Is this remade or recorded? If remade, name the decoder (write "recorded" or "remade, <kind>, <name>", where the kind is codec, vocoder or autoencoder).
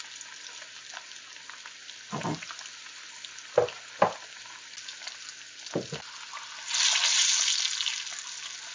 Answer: recorded